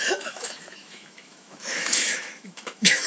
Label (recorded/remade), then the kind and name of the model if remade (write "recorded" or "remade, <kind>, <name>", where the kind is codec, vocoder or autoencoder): remade, autoencoder, DAC-VAE